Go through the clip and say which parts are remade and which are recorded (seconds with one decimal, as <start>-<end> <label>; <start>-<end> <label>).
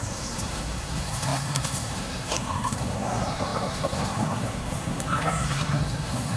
0.0-6.4 remade